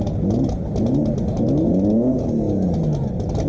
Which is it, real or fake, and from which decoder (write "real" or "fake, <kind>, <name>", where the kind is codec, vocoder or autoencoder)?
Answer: real